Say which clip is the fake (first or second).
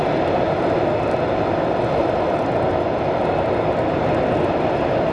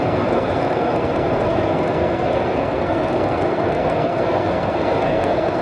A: second